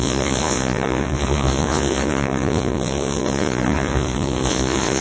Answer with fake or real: fake